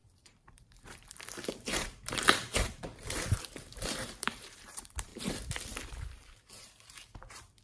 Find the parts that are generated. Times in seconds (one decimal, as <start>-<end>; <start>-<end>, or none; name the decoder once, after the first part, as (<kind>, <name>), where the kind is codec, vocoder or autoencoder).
0.0-5.1 (vocoder, BigVGAN v2); 5.9-7.6